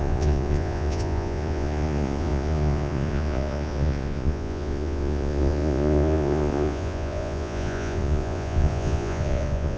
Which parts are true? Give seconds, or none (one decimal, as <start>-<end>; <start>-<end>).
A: none